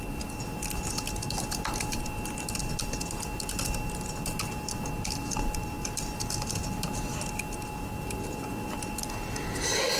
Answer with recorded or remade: recorded